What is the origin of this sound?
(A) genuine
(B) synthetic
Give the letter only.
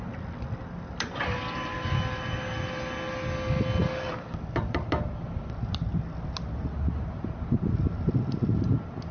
A